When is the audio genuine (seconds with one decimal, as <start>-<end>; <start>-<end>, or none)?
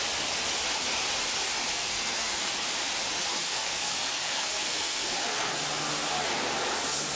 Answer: 0.0-1.7; 2.5-3.2; 5.5-7.2